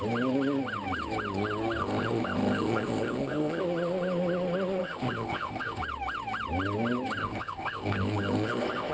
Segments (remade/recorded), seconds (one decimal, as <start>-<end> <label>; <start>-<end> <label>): 0.0-1.8 recorded; 1.8-3.6 remade; 3.6-4.8 recorded; 4.8-5.8 remade; 5.8-7.2 recorded; 7.2-8.9 remade